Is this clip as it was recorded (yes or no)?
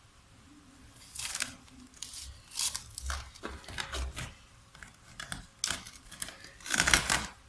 yes